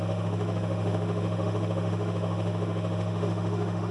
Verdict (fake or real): fake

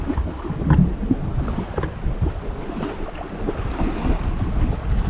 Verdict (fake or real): real